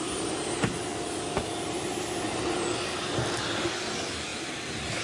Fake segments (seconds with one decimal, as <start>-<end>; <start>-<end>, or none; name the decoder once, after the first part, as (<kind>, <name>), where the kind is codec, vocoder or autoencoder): 0.9-1.5 (vocoder, BigVGAN v2); 4.3-5.0